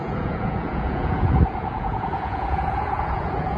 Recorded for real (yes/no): no